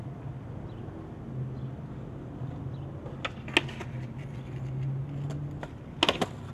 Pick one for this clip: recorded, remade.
recorded